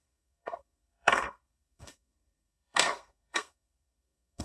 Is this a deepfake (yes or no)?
yes